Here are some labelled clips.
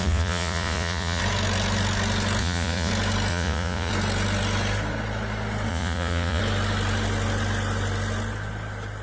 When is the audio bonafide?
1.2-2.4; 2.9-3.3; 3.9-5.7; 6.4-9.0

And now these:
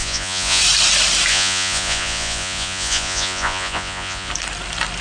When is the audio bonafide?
0.6-1.3; 4.3-5.0

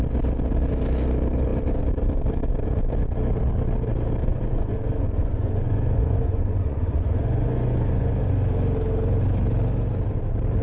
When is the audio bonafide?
0.0-4.2; 4.8-5.2; 8.3-10.6